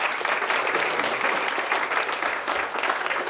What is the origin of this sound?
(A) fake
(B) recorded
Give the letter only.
B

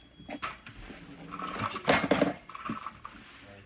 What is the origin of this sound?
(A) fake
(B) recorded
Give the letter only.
B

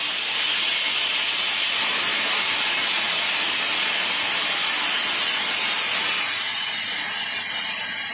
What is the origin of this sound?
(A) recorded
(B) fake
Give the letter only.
A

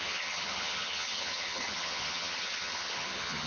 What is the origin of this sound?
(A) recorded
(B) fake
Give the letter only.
B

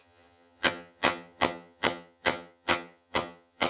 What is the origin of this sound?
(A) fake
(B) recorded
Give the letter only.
A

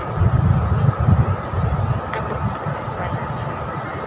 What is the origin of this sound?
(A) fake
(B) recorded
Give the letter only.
B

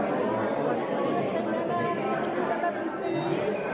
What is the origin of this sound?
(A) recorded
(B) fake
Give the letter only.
A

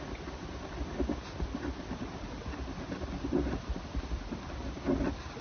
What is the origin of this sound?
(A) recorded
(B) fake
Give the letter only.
A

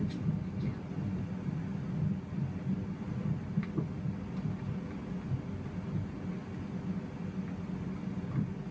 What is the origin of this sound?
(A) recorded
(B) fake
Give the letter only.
A